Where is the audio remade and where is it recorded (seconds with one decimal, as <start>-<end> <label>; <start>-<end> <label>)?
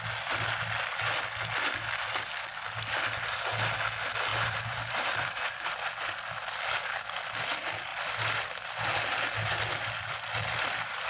0.0-4.3 recorded; 4.3-5.7 remade; 5.7-11.1 recorded